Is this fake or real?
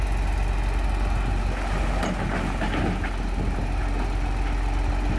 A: real